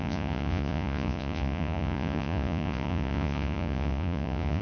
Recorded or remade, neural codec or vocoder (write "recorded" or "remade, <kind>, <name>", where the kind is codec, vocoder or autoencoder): remade, vocoder, Vocos